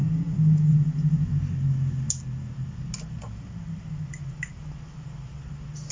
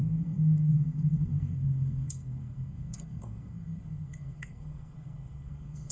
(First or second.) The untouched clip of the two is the first